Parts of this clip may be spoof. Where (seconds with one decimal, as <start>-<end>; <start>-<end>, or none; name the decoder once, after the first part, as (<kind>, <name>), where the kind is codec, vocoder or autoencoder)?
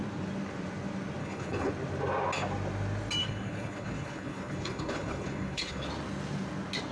1.2-1.7 (codec, HILCodec); 3.2-5.9